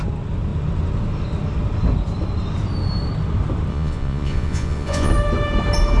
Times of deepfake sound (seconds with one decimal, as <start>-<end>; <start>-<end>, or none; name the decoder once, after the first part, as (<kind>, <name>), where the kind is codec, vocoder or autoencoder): 3.7-5.1 (vocoder, Vocos)